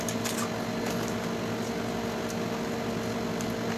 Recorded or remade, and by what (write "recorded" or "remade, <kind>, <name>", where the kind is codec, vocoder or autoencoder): recorded